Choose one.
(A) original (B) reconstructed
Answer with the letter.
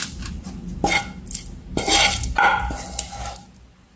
A